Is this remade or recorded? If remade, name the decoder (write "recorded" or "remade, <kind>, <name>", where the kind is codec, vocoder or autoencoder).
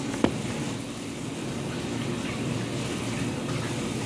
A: recorded